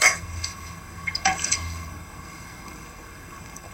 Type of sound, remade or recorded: remade